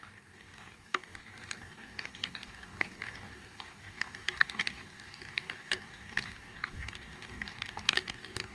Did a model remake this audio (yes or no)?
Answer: yes